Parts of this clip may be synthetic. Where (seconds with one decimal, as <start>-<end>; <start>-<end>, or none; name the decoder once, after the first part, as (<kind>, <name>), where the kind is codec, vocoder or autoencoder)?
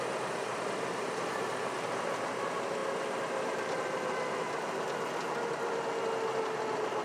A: none